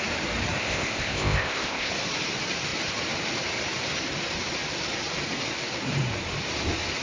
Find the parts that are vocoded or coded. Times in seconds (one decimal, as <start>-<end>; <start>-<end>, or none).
0.6-1.9